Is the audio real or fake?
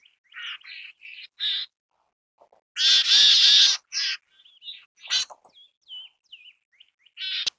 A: real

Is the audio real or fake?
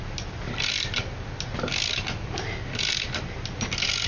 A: real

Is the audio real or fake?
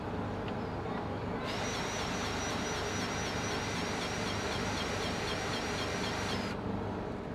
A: real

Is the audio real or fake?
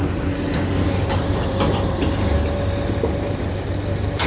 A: real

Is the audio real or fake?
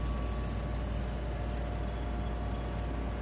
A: real